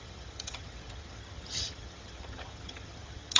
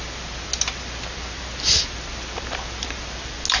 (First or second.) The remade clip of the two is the first